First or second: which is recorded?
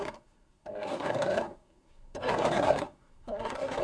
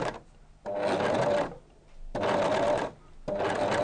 second